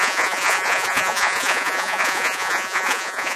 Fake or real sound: fake